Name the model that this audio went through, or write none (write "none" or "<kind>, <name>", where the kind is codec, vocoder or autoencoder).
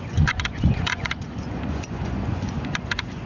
vocoder, Vocos